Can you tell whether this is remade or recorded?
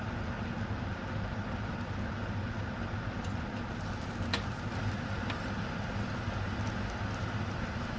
recorded